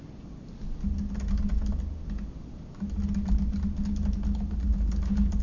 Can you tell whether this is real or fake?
real